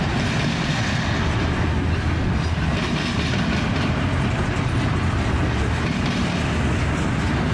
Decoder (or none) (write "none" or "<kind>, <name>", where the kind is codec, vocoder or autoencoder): none